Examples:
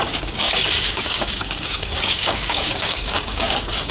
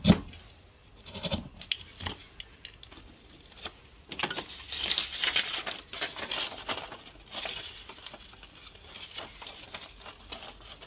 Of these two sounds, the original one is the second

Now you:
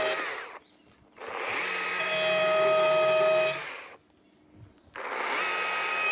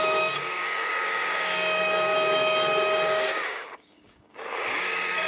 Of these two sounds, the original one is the first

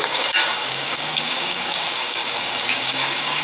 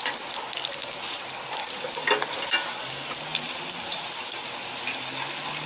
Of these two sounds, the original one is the second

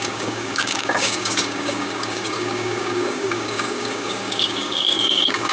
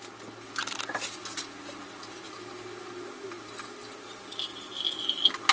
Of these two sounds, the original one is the second